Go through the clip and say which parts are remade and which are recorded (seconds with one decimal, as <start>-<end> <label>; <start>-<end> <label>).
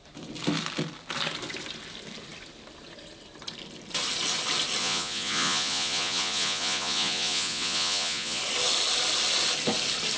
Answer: 0.0-4.8 recorded; 4.8-8.4 remade; 8.4-10.2 recorded